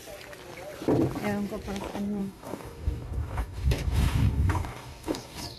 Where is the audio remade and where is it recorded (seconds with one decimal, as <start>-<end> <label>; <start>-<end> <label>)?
0.0-2.2 recorded; 2.2-5.6 remade